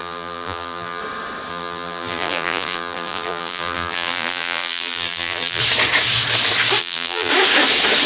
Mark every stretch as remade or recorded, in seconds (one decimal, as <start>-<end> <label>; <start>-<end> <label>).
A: 0.0-1.0 remade; 1.0-1.5 recorded; 1.5-5.6 remade; 5.6-6.8 recorded; 6.8-7.3 remade; 7.3-8.1 recorded